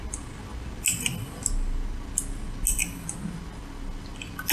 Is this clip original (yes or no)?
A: yes